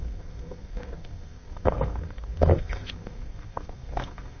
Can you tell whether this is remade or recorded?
remade